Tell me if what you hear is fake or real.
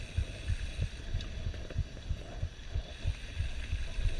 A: real